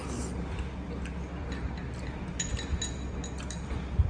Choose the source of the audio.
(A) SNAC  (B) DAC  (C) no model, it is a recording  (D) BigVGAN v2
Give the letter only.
C